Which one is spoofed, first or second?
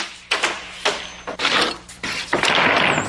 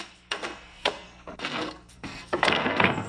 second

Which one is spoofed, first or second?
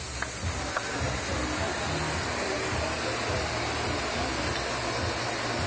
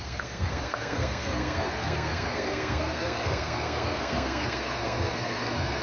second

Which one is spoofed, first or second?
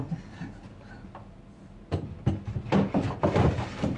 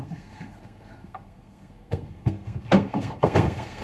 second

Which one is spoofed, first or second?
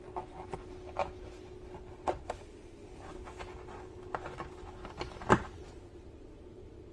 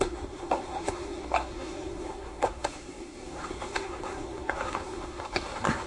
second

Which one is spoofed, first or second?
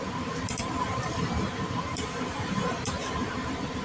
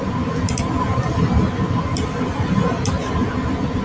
first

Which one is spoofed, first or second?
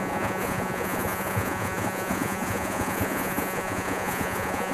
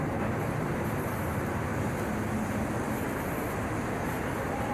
first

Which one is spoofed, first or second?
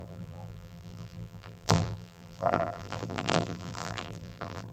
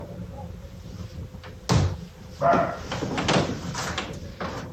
first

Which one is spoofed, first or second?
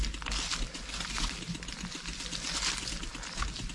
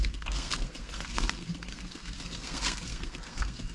second